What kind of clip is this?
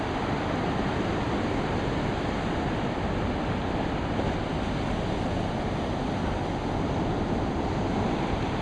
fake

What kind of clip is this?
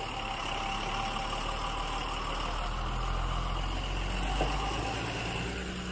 real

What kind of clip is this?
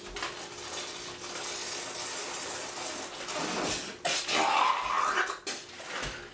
real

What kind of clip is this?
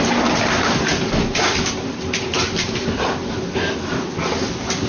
fake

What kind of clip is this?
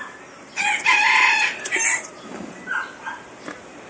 real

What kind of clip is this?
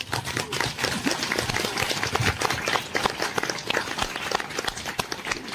real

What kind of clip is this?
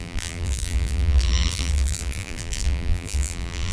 fake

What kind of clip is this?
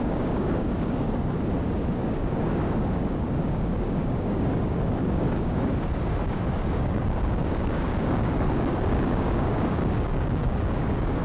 fake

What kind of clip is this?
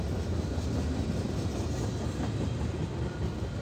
real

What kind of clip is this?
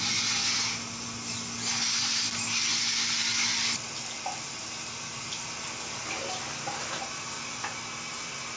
real